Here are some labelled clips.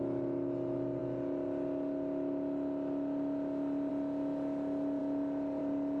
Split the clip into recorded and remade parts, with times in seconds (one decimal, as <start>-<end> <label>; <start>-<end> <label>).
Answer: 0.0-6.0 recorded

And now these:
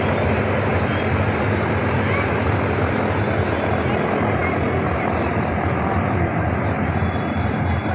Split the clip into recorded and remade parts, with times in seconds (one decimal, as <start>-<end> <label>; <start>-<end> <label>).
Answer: 0.0-7.9 recorded

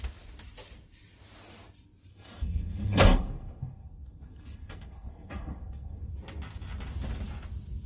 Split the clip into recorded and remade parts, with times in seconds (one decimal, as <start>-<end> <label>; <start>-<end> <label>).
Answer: 0.0-2.1 recorded; 2.1-6.1 remade; 6.1-7.9 recorded

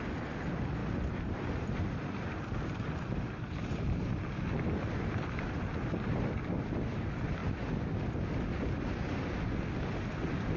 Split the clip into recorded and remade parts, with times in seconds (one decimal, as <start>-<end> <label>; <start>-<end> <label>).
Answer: 0.0-0.8 recorded; 0.8-4.1 remade; 4.1-10.6 recorded